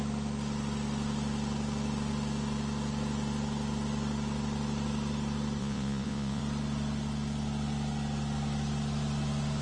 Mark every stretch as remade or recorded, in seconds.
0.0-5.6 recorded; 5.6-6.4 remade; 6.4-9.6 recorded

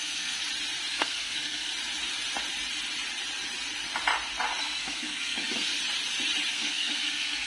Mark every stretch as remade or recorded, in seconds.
0.0-0.4 remade; 0.4-0.9 recorded; 0.9-1.7 remade; 1.7-4.6 recorded; 4.6-5.7 remade; 5.7-6.5 recorded; 6.5-7.5 remade

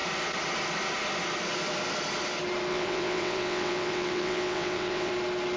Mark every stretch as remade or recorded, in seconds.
0.0-2.7 recorded; 2.7-5.1 remade; 5.1-5.6 recorded

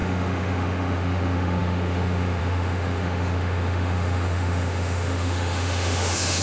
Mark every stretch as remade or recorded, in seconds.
0.0-6.4 remade

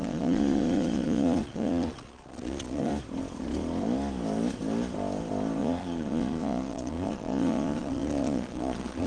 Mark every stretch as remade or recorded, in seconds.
0.0-2.9 remade; 2.9-5.6 recorded; 5.6-9.1 remade

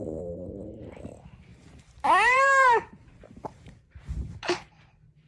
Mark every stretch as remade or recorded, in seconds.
0.0-1.5 recorded; 1.5-4.7 remade; 4.7-5.3 recorded